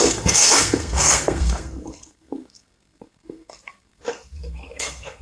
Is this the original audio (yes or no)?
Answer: no